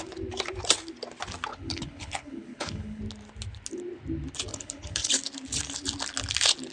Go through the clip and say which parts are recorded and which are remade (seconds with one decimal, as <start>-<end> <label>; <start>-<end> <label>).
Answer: 0.0-1.5 recorded; 1.5-3.0 remade; 3.0-4.5 recorded; 4.5-5.1 remade; 5.1-6.7 recorded